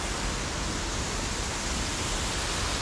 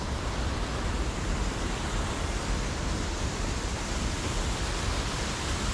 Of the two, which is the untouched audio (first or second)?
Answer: first